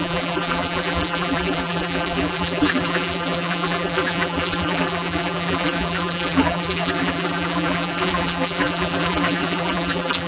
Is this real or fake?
fake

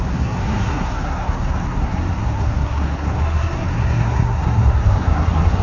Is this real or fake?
fake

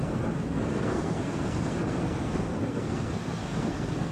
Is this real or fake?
fake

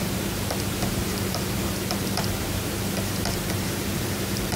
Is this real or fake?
fake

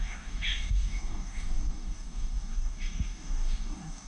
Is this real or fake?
fake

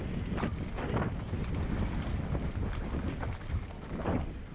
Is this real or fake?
real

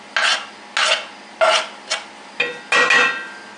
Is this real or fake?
real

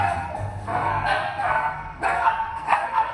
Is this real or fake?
fake